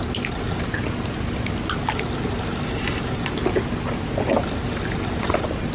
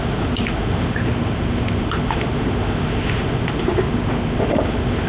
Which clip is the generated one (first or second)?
second